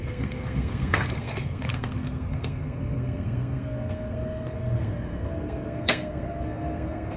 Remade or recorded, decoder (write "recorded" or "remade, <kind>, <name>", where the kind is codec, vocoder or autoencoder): remade, codec, SNAC